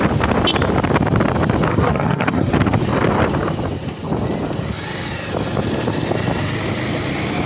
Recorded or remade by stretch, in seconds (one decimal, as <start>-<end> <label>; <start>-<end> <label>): 0.0-1.7 recorded; 1.7-2.5 remade; 2.5-7.5 recorded